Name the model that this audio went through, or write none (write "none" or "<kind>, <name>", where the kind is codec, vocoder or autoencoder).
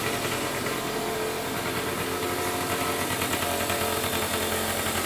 none